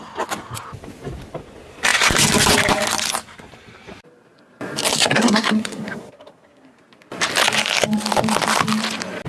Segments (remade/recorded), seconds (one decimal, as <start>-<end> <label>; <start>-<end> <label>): 0.0-4.9 recorded; 4.9-6.8 remade; 6.8-9.3 recorded